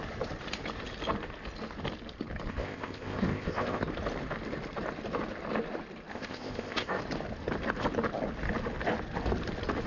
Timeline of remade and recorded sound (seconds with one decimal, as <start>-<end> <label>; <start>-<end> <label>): 0.0-2.5 recorded; 2.5-3.8 remade; 3.8-6.1 recorded; 6.1-7.0 remade; 7.0-9.9 recorded